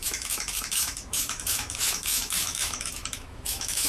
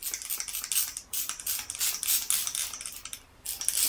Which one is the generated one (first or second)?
first